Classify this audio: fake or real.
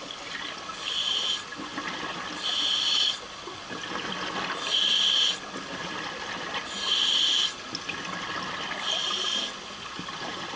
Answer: real